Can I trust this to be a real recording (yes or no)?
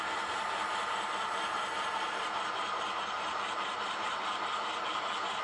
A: no